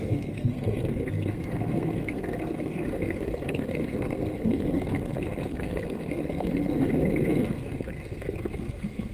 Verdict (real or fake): fake